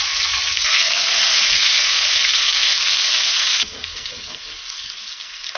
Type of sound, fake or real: fake